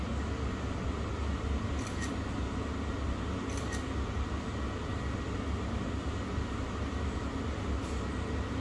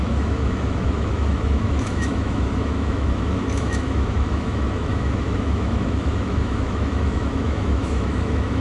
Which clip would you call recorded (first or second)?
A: first